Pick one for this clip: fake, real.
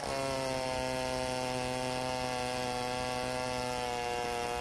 real